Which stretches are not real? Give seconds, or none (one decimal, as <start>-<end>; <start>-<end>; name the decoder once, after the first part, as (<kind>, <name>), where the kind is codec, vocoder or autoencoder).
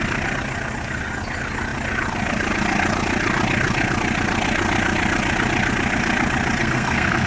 6.6-7.3 (codec, SNAC)